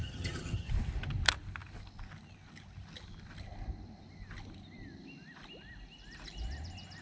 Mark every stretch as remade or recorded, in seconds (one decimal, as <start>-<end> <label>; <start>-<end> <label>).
0.0-0.7 remade; 0.7-7.0 recorded